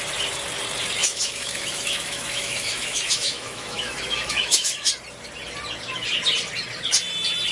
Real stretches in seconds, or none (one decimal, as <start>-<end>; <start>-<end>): 0.0-1.0; 4.9-7.5